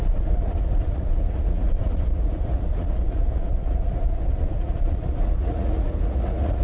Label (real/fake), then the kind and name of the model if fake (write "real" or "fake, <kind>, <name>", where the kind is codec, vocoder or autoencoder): fake, vocoder, Vocos